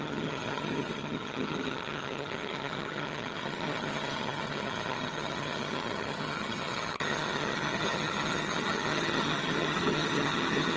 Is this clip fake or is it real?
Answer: fake